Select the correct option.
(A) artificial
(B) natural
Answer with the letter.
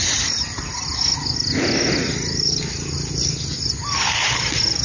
B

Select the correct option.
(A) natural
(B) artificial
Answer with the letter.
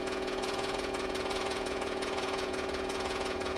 B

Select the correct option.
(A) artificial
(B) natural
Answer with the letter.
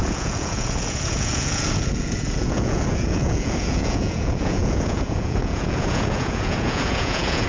A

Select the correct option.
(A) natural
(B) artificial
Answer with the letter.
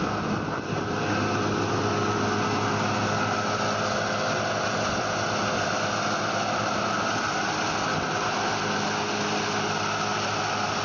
A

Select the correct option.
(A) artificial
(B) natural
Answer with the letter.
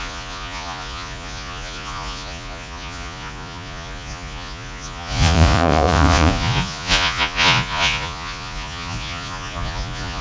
A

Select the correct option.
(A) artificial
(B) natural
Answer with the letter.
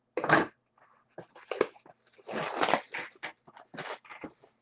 B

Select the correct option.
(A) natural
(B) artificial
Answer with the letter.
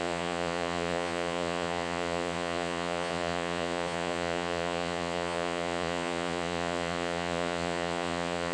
B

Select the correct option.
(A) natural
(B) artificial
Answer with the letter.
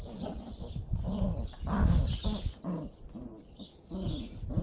A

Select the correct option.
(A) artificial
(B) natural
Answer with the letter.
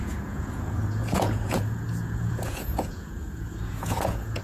A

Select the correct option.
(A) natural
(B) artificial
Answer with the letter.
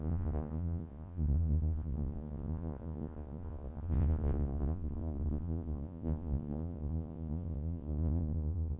B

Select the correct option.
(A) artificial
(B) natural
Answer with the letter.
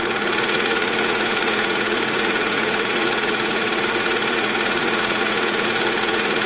A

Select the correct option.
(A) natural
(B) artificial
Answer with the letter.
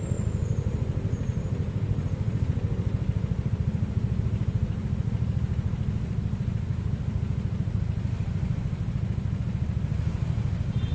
A